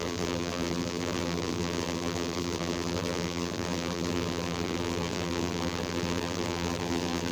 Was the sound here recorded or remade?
remade